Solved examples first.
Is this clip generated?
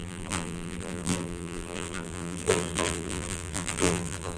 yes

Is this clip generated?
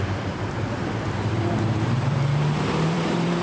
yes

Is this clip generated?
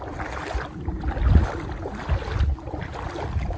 no